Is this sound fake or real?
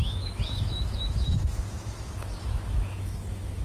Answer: fake